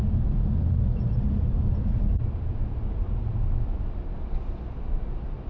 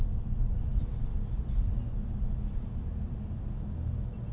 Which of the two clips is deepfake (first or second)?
first